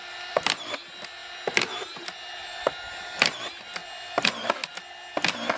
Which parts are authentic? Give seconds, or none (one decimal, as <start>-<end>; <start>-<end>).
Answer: 0.0-5.6